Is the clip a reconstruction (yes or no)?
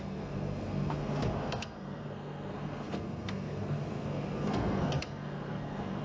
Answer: yes